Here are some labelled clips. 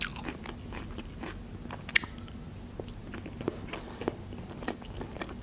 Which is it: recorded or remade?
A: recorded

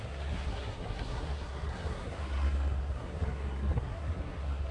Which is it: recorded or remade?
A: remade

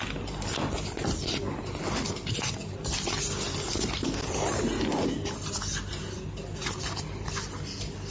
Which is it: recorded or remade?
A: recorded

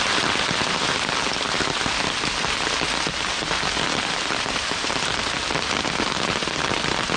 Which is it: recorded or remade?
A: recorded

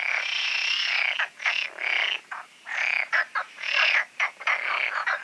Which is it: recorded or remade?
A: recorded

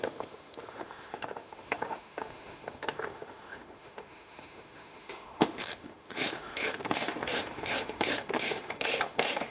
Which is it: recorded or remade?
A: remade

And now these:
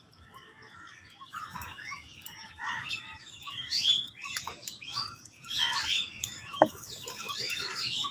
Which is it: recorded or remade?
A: remade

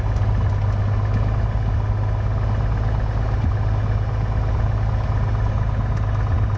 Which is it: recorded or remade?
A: recorded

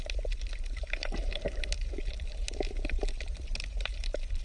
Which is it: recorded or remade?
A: remade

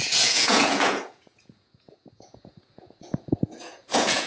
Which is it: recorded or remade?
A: remade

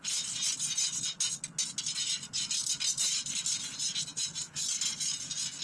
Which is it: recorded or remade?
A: recorded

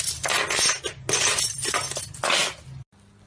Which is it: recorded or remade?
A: recorded